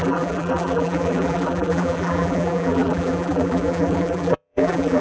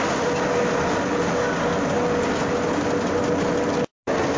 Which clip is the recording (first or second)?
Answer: second